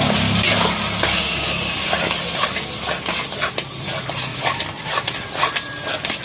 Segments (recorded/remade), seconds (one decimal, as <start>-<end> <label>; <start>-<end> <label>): 0.0-6.2 recorded